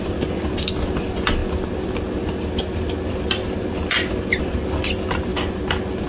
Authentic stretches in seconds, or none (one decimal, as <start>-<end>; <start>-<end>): 0.0-6.1